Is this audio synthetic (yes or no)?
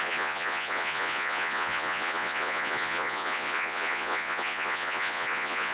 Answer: yes